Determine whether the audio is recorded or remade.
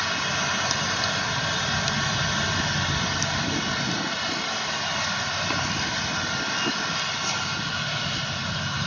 recorded